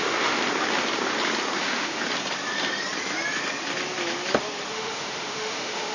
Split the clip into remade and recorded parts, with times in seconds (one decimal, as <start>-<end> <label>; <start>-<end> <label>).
0.0-0.4 remade; 0.4-1.6 recorded; 1.6-2.0 remade; 2.0-4.7 recorded; 4.7-5.9 remade